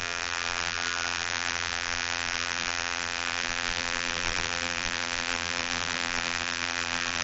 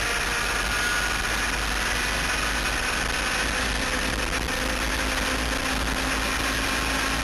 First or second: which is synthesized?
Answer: first